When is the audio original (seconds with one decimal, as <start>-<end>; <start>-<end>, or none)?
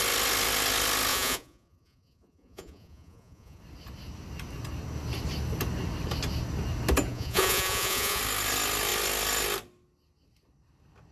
0.0-1.1; 3.6-7.1; 8.2-11.1